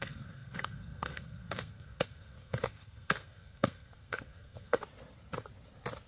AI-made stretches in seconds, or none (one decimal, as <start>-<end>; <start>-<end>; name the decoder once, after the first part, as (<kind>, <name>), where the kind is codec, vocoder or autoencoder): 0.0-4.8 (codec, SNAC)